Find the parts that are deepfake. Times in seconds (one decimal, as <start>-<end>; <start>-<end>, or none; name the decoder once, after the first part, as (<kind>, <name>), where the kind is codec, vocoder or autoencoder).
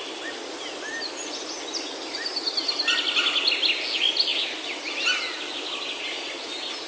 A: none